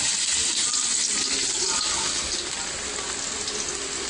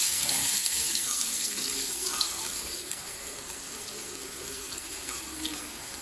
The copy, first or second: second